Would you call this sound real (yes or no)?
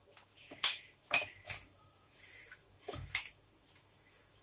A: no